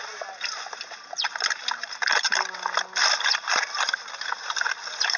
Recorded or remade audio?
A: recorded